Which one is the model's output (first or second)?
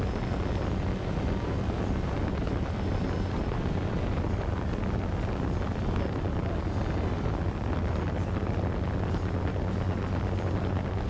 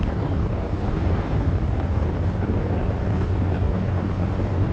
second